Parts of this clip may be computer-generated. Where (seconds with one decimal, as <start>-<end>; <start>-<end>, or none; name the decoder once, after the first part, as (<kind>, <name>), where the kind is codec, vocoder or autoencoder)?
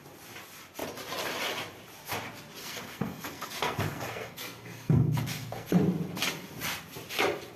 2.6-5.8 (codec, SNAC)